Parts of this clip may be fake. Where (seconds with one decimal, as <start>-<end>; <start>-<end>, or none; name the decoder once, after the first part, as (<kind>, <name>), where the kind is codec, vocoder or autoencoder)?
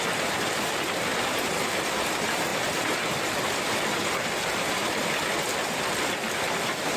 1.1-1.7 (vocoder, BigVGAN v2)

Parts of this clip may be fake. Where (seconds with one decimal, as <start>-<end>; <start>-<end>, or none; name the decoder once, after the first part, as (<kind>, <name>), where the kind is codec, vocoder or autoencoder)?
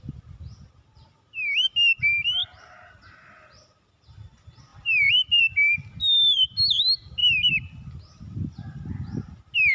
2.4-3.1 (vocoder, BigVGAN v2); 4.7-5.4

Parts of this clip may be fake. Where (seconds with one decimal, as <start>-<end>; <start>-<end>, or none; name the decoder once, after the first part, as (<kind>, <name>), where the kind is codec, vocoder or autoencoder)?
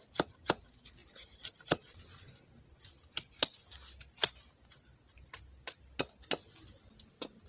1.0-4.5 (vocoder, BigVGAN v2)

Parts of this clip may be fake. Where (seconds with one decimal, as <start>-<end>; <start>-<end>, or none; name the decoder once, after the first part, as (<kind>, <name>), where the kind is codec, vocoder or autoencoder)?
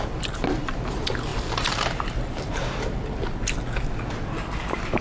1.3-3.0 (vocoder, BigVGAN v2)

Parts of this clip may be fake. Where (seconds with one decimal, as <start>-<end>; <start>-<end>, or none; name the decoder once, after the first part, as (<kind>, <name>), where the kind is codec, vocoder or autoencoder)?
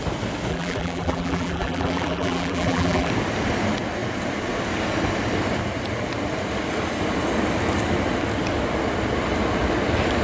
0.5-3.1 (vocoder, BigVGAN v2)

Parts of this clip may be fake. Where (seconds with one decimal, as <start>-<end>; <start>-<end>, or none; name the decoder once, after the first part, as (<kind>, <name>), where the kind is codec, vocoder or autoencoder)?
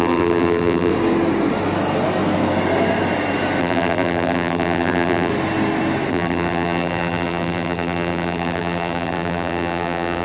0.0-0.9 (vocoder, BigVGAN v2); 3.6-5.3; 6.1-10.2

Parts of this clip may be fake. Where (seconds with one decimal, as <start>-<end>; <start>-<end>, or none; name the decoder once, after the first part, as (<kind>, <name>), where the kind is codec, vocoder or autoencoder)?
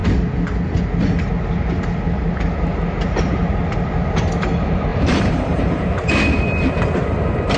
4.9-6.7 (vocoder, BigVGAN v2)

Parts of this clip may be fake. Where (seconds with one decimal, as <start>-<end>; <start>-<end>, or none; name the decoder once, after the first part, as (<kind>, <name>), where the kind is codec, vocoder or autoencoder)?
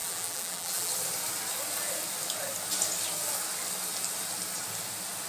0.0-0.9 (vocoder, BigVGAN v2)